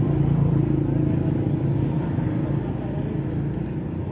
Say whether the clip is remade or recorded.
recorded